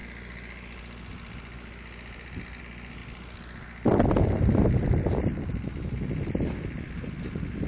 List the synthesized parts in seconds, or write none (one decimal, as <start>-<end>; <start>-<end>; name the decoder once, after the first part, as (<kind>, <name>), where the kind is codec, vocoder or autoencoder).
none